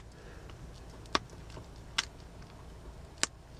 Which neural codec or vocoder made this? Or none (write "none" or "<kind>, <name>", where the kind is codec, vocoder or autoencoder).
none